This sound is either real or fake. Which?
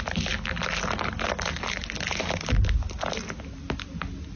real